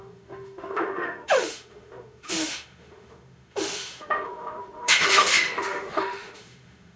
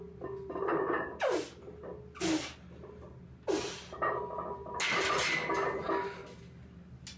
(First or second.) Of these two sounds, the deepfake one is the first